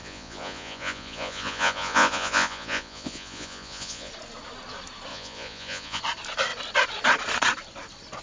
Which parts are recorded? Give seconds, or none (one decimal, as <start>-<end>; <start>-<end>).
4.1-5.1; 6.0-8.2